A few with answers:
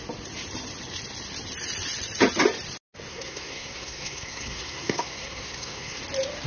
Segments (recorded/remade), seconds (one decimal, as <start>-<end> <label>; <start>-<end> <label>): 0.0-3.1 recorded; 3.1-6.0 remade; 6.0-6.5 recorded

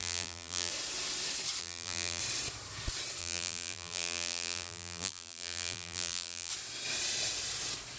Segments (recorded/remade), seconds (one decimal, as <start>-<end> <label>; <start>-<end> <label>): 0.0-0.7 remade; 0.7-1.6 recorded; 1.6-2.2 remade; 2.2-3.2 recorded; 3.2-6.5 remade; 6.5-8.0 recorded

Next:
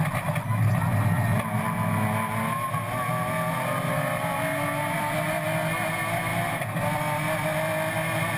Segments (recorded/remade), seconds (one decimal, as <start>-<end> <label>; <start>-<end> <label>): 0.0-8.4 recorded